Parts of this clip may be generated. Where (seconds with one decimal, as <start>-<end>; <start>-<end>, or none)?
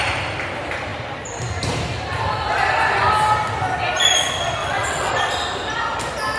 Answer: 4.6-5.1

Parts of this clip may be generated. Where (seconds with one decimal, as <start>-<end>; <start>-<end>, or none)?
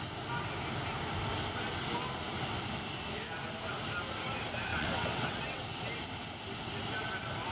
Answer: 4.7-5.6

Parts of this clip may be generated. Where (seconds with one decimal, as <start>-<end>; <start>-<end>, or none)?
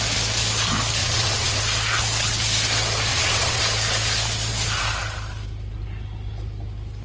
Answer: 1.0-1.6; 3.1-3.6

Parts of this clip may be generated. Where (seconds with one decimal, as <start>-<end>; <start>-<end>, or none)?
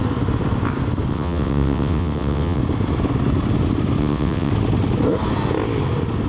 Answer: 1.1-2.6; 4.0-4.5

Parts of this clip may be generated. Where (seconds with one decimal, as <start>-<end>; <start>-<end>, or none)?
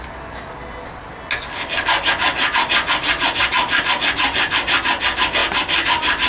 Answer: none